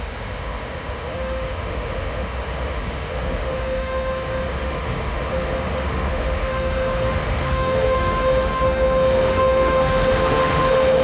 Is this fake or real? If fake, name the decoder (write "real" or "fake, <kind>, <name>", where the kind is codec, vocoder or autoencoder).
fake, autoencoder, DAC-VAE